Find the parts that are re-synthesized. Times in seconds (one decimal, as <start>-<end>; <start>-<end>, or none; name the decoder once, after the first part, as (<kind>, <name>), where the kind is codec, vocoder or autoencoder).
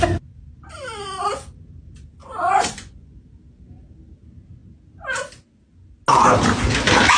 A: 2.2-3.1 (vocoder, Vocos)